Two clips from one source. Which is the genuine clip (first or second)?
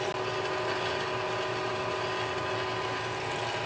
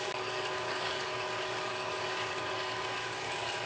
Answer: first